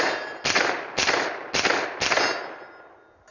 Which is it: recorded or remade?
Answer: recorded